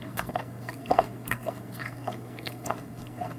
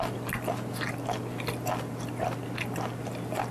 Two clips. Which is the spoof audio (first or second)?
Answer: first